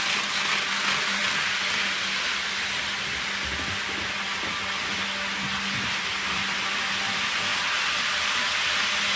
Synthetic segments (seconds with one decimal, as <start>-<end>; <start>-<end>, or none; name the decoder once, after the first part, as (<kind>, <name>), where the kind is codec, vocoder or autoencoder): none